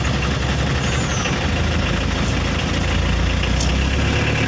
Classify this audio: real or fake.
real